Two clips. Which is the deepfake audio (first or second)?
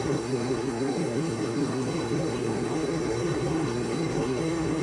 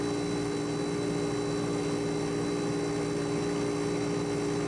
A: first